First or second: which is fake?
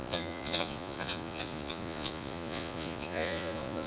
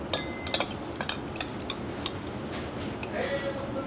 first